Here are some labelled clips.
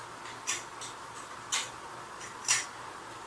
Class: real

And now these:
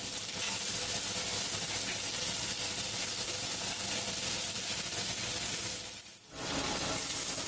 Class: real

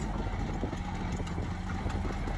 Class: real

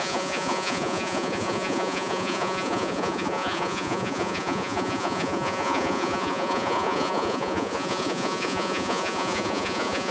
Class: fake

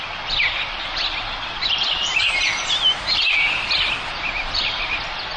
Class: real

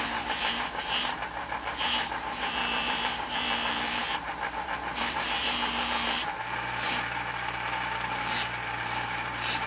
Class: fake